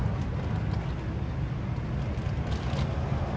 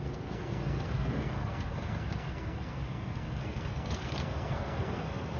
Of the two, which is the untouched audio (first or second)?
first